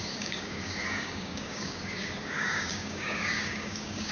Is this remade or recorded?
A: remade